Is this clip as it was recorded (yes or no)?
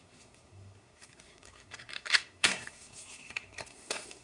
no